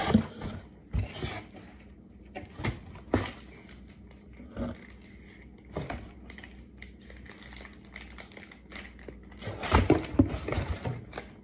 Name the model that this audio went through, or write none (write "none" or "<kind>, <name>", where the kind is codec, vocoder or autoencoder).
none